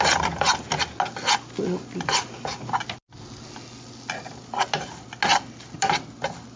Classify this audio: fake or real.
real